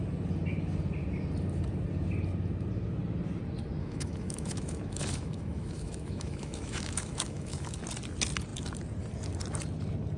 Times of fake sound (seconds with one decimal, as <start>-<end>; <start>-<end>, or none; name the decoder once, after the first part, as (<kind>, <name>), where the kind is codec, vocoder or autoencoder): 3.8-7.8 (autoencoder, DAC-VAE)